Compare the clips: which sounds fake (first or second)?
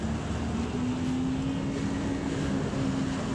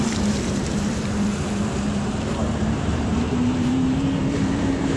second